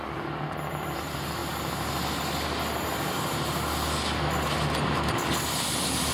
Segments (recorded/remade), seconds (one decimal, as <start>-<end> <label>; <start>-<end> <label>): 0.0-1.4 remade; 1.4-5.1 recorded; 5.1-6.1 remade